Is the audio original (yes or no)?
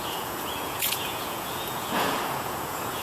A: no